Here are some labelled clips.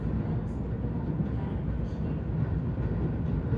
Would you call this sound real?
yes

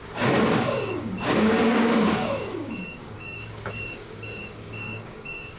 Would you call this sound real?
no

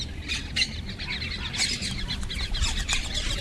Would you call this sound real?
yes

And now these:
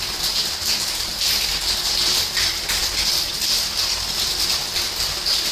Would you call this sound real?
yes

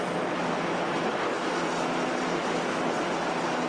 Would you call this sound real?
yes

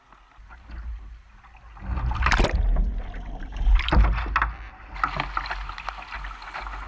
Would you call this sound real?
yes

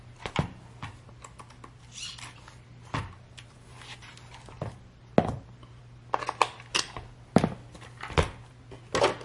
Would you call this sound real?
yes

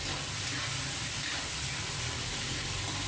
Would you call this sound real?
yes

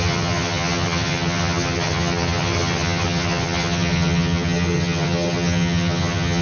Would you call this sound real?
no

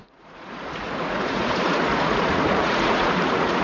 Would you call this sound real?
no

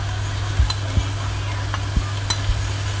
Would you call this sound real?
yes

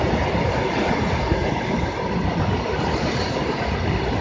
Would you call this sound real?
yes